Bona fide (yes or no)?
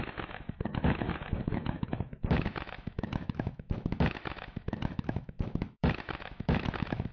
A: no